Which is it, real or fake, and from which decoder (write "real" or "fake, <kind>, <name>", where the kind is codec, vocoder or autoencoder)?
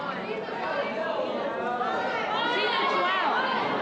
real